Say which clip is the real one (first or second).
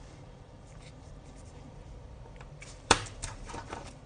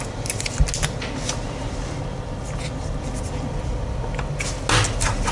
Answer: second